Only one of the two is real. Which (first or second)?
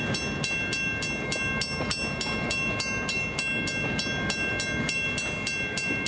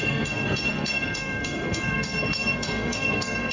first